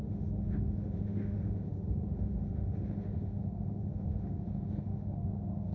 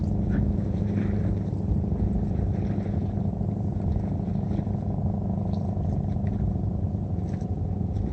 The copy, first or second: first